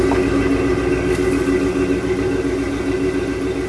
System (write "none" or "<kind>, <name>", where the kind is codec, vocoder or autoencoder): none